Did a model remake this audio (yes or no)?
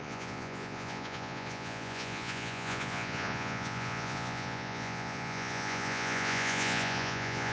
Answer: yes